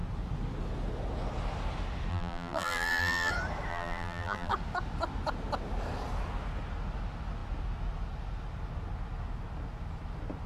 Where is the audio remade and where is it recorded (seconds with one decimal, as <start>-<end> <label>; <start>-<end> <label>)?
0.0-2.1 recorded; 2.1-3.3 remade; 3.3-3.7 recorded; 3.7-4.5 remade; 4.5-10.5 recorded